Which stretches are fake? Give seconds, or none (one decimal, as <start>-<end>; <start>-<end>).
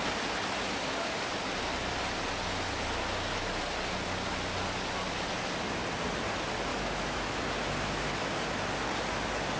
6.7-7.4